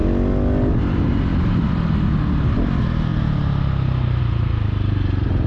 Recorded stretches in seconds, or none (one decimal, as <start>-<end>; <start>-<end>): 0.0-5.5